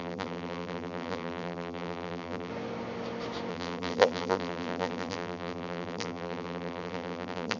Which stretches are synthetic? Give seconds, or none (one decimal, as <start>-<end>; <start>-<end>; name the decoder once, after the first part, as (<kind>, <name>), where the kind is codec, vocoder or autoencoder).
0.0-2.5 (vocoder, BigVGAN v2); 3.5-7.6